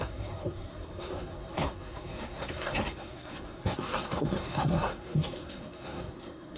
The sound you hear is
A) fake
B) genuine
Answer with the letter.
A